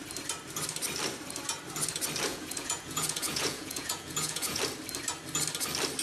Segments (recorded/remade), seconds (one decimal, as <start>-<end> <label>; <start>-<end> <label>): 0.0-2.3 recorded; 2.3-4.6 remade; 4.6-6.0 recorded